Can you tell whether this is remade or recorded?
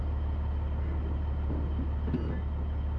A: recorded